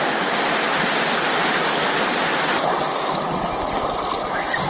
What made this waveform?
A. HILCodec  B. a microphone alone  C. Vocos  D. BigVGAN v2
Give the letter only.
B